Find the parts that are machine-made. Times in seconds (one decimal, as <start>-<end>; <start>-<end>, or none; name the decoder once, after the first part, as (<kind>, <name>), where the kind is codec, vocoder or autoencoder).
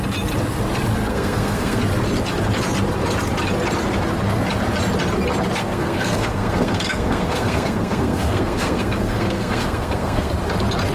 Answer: 1.1-1.8 (codec, SNAC); 5.6-10.3